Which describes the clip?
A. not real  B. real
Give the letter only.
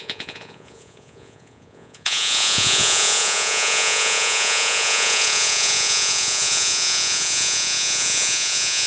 A